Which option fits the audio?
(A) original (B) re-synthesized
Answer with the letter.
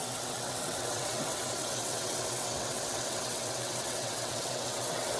B